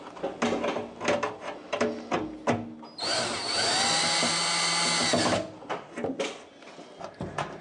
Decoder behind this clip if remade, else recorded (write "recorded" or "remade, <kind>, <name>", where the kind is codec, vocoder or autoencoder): recorded